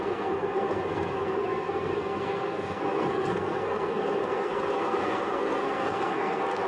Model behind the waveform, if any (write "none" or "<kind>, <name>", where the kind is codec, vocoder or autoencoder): codec, SNAC